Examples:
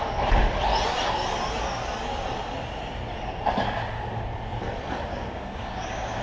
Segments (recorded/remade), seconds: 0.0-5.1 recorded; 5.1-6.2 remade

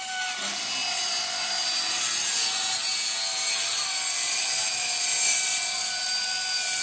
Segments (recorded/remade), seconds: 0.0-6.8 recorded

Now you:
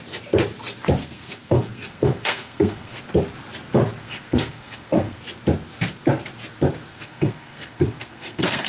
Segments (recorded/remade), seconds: 0.0-1.0 recorded; 1.0-3.0 remade; 3.0-4.0 recorded; 4.0-5.2 remade; 5.2-6.9 recorded; 6.9-8.7 remade

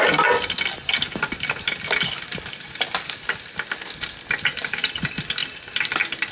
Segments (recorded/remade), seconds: 0.0-6.3 recorded

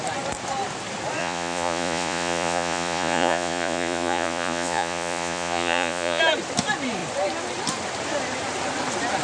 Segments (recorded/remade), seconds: 0.0-1.2 recorded; 1.2-6.2 remade; 6.2-9.2 recorded

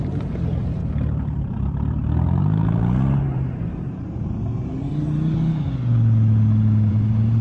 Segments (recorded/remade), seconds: 0.0-0.8 remade; 0.8-3.7 recorded; 3.7-4.9 remade; 4.9-6.9 recorded; 6.9-7.4 remade

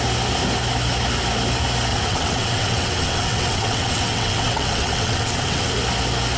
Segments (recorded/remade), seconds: 0.0-1.9 recorded; 1.9-5.7 remade; 5.7-6.4 recorded